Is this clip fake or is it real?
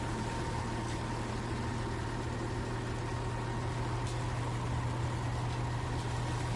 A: real